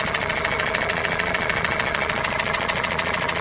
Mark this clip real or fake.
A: fake